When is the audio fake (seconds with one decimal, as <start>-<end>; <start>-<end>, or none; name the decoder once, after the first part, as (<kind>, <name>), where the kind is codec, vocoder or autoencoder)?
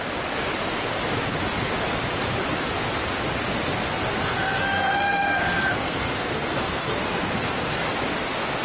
4.1-7.8 (codec, SNAC)